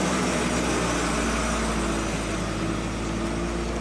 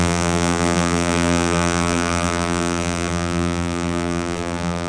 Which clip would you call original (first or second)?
first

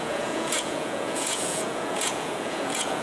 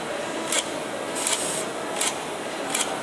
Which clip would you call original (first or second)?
second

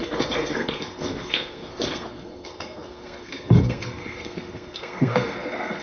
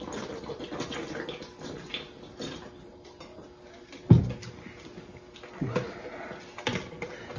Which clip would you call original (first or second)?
second